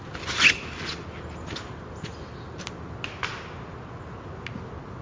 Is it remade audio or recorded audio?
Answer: recorded